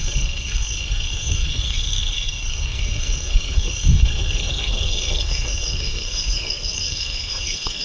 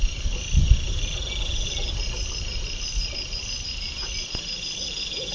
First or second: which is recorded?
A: second